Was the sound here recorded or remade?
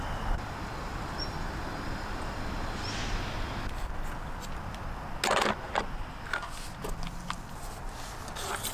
recorded